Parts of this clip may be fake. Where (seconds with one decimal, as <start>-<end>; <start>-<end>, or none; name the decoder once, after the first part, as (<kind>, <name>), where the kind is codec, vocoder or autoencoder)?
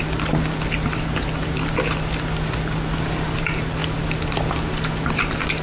none